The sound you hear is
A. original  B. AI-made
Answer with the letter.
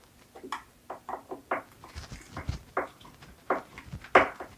A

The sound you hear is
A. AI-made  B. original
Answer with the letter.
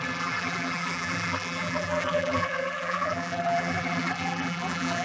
A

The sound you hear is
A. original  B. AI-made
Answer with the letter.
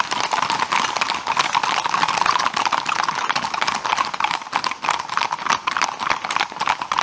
A